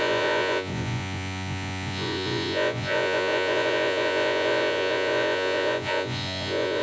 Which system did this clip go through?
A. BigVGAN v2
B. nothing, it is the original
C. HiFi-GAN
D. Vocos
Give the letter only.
D